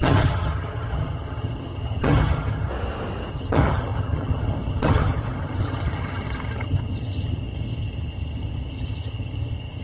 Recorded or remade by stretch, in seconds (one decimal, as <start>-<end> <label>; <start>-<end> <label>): 0.0-2.7 remade; 2.7-3.3 recorded; 3.3-9.8 remade